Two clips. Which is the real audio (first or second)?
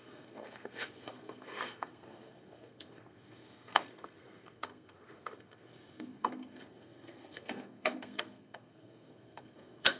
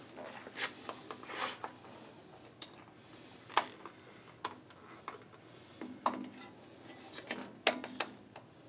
second